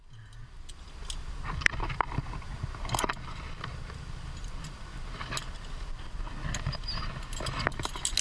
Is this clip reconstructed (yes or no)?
no